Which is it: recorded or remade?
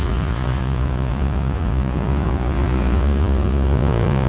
remade